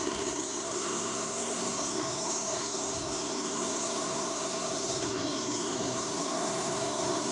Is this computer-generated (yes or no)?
yes